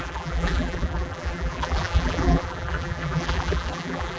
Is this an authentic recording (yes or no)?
no